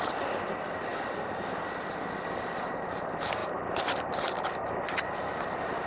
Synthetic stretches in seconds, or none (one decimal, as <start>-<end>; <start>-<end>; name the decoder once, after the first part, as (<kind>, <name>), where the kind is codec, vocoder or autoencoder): 3.4-4.0 (vocoder, BigVGAN v2)